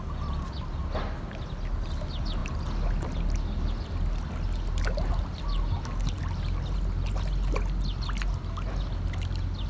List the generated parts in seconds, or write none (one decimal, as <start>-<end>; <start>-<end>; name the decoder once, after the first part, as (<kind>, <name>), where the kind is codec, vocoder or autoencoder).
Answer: none